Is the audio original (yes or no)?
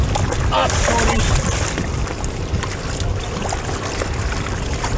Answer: yes